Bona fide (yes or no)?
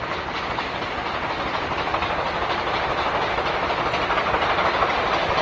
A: yes